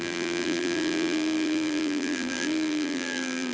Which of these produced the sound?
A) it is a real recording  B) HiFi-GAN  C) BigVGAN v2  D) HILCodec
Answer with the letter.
C